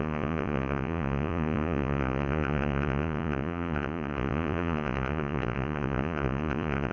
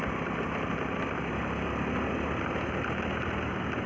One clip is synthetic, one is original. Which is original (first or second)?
second